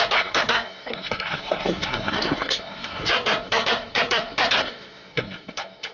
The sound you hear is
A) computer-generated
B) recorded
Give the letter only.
A